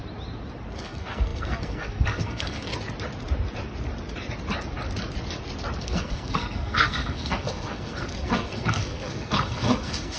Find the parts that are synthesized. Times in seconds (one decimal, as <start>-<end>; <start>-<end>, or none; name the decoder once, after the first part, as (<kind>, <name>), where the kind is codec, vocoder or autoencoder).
0.8-2.7 (codec, SNAC); 5.8-10.2